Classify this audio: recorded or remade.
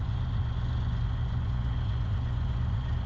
remade